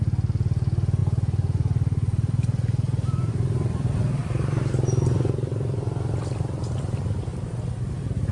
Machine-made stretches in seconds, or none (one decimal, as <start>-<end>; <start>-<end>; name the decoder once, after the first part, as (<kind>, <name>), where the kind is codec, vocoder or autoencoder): 1.0-3.3 (vocoder, BigVGAN v2); 4.2-4.7